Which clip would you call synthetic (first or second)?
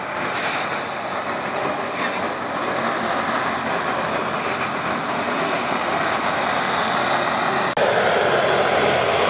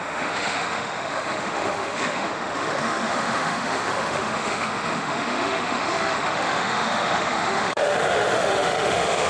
second